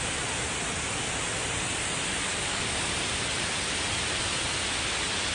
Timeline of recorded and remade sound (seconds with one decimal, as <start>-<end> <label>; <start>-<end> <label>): 0.0-2.3 recorded; 2.3-2.8 remade; 2.8-5.3 recorded